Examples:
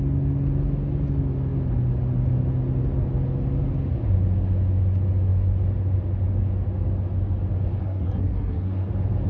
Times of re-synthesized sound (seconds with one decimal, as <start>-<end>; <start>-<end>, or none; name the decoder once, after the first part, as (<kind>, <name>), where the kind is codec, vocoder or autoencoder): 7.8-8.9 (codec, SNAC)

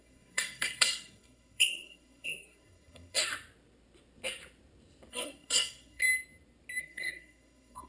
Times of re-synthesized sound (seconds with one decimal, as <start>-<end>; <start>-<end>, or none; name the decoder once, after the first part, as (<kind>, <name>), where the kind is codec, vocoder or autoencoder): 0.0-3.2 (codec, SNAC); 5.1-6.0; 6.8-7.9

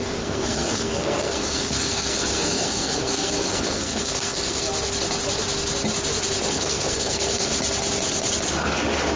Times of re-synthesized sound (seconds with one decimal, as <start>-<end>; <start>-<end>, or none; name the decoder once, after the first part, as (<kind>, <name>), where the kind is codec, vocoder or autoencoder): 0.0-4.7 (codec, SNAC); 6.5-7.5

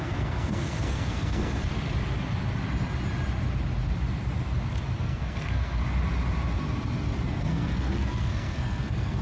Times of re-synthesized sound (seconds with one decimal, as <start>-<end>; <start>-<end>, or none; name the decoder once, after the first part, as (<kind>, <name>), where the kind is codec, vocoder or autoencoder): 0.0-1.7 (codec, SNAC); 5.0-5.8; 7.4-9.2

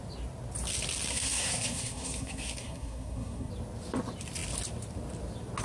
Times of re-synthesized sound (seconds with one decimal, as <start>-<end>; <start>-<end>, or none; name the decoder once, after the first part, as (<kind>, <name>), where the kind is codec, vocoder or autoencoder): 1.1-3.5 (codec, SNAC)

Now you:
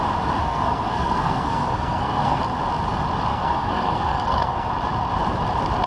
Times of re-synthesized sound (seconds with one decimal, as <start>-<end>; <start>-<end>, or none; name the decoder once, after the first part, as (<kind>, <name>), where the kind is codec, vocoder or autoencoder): 0.4-2.4 (codec, SNAC); 3.3-4.7